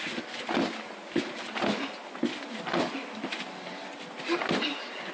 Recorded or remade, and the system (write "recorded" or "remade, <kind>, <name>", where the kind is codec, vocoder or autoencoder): recorded